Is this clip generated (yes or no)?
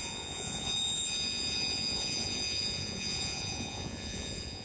yes